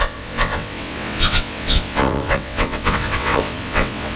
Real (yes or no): no